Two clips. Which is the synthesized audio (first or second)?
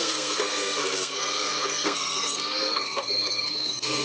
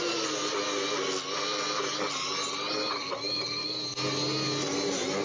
first